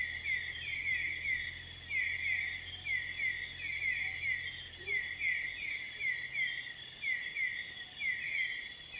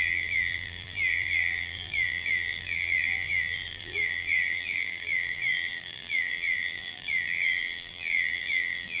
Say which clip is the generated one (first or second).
second